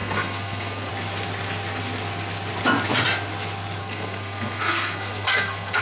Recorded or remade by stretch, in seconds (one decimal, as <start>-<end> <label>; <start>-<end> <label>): 0.0-0.9 remade; 0.9-3.8 recorded; 3.8-5.8 remade